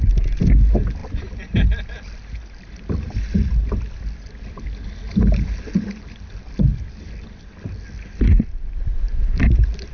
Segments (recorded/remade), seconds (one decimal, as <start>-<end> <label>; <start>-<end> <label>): 0.0-1.0 recorded; 1.0-4.3 remade; 4.3-6.7 recorded; 6.7-7.9 remade; 7.9-9.9 recorded